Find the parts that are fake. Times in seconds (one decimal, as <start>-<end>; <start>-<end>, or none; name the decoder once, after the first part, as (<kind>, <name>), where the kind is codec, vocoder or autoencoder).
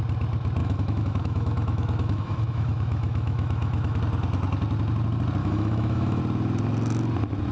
0.6-4.0 (autoencoder, DAC-VAE); 5.4-6.2